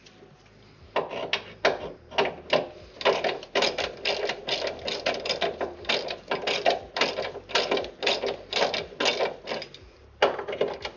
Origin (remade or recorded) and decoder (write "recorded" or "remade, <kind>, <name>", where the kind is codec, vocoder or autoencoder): recorded